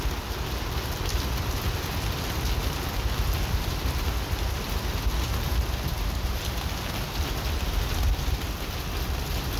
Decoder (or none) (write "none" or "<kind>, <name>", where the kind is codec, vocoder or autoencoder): none